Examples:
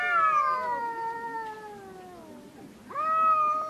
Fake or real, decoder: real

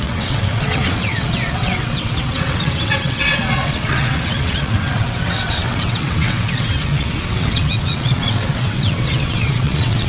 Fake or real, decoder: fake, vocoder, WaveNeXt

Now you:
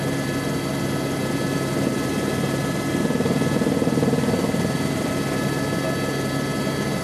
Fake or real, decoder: real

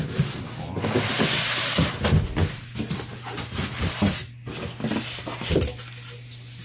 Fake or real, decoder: real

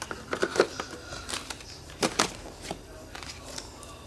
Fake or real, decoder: real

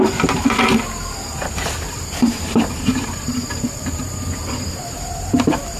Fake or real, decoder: fake, vocoder, BigVGAN v2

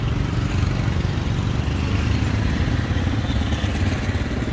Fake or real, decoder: real